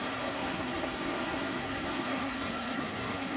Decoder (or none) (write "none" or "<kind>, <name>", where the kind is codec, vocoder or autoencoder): codec, SNAC